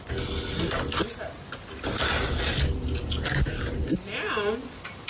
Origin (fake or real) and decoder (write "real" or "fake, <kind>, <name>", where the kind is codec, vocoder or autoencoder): real